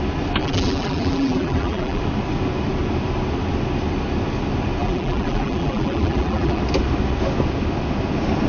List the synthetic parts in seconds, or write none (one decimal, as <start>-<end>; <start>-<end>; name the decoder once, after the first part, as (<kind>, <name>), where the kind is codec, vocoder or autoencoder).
0.4-2.0 (vocoder, BigVGAN v2); 4.8-6.6